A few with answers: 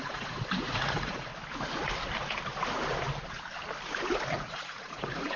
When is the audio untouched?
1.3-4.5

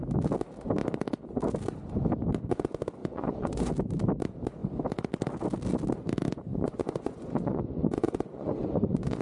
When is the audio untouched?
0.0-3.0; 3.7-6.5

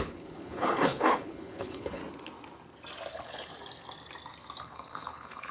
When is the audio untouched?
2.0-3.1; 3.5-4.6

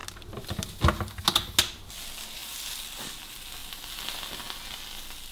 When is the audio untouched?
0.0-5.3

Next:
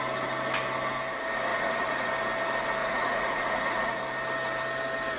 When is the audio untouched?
0.0-1.5; 2.1-2.8; 4.0-5.2

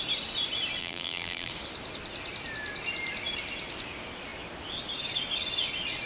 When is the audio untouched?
0.0-0.8; 1.5-6.1

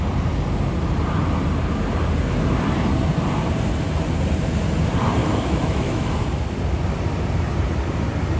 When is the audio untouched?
0.0-5.2; 6.2-8.4